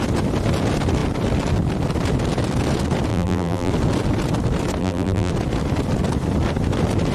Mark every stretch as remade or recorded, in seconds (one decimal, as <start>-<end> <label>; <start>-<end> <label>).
0.0-3.1 recorded; 3.1-3.7 remade; 3.7-4.8 recorded; 4.8-5.3 remade; 5.3-7.1 recorded